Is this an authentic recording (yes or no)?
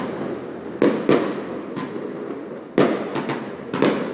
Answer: yes